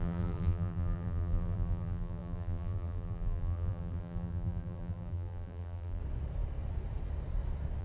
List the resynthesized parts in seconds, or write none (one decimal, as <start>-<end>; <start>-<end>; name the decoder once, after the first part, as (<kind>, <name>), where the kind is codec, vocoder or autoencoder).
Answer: 0.0-6.0 (vocoder, BigVGAN v2)